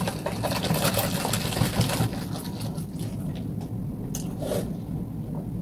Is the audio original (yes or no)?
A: yes